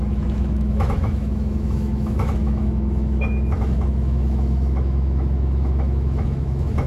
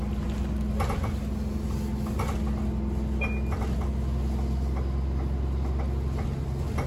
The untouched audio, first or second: second